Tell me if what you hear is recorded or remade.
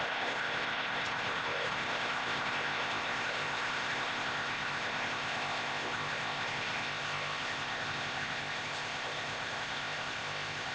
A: remade